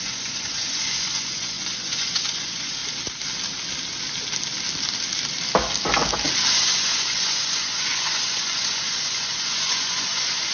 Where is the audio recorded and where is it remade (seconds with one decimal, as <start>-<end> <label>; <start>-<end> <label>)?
0.0-2.8 remade; 2.8-6.5 recorded; 6.5-10.5 remade